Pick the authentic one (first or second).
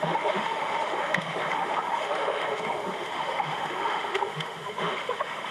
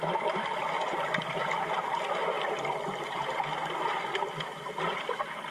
second